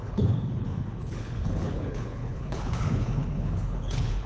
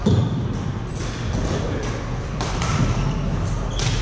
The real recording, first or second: second